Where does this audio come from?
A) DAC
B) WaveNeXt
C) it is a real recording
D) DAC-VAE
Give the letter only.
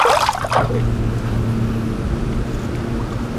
C